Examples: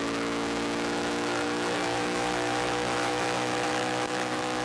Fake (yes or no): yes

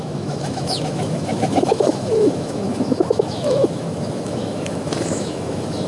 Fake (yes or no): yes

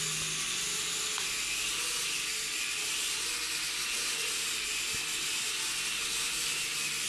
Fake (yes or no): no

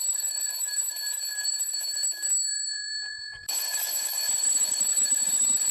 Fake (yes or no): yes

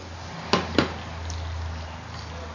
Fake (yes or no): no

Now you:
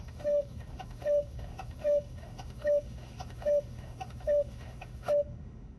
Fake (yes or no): yes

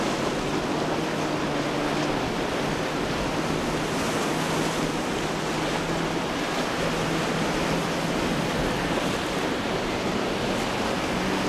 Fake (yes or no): no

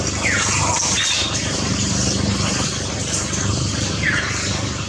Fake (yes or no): no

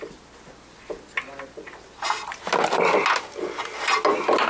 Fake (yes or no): no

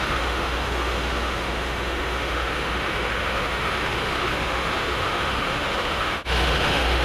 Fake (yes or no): yes